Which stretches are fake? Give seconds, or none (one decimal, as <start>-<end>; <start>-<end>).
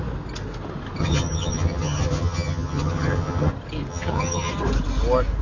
1.0-3.5; 3.9-4.5